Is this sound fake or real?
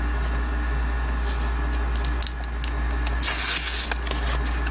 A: real